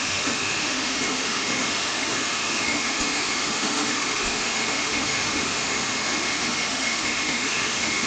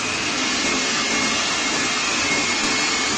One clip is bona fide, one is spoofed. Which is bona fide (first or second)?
second